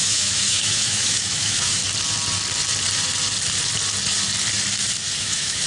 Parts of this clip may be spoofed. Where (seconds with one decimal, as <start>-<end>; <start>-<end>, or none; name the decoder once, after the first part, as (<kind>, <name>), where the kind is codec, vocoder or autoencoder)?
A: 0.0-1.8 (autoencoder, DAC-VAE); 5.2-5.7